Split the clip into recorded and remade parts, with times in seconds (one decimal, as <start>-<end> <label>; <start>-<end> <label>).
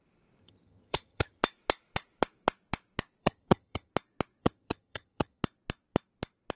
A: 0.0-0.4 recorded; 0.4-1.4 remade; 1.4-3.2 recorded; 3.2-3.9 remade; 3.9-4.4 recorded; 4.4-5.4 remade; 5.4-6.6 recorded